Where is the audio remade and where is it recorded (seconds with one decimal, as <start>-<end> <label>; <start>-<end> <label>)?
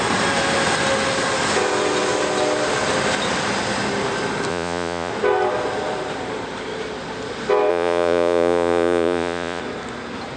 0.0-4.5 recorded; 4.5-5.1 remade; 5.1-7.7 recorded; 7.7-9.6 remade; 9.6-10.4 recorded